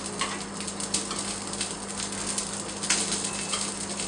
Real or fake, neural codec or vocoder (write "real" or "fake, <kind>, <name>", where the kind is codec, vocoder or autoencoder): real